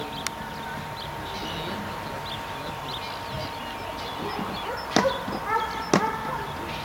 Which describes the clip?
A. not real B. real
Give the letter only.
B